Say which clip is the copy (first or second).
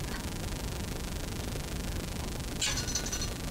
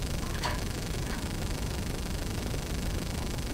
second